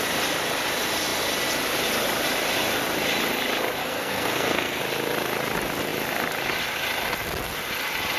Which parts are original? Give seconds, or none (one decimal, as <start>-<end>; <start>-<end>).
0.0-3.8; 4.8-8.2